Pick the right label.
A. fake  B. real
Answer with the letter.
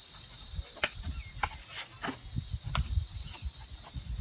B